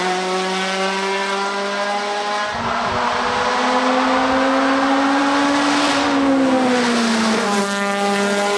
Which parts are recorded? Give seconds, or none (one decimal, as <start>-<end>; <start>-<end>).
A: 0.0-8.6